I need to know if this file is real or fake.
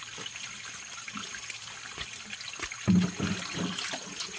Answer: real